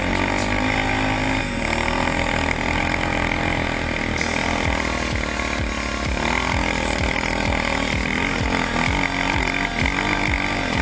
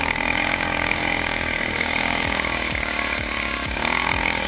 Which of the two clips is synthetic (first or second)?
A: second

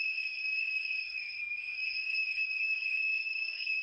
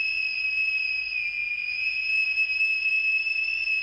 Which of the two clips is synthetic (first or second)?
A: first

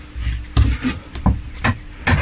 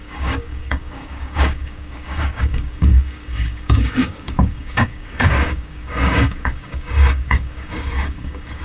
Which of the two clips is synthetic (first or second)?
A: second